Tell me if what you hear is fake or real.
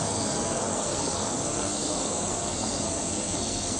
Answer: fake